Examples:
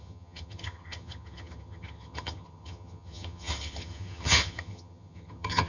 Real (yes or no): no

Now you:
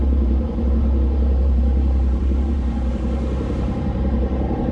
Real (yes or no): no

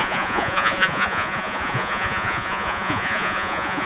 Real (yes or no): no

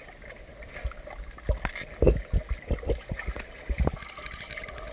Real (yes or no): yes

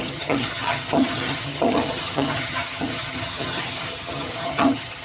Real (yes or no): no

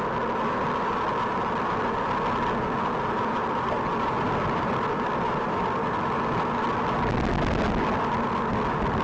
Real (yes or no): yes